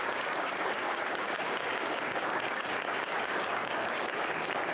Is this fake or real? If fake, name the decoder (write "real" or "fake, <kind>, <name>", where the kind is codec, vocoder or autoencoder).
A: fake, codec, DAC